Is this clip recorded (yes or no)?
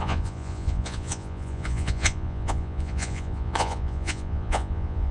no